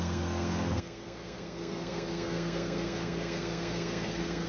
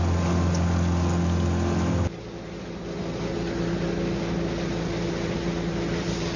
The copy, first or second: first